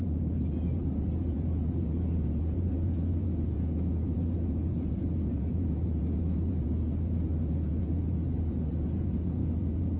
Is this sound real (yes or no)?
no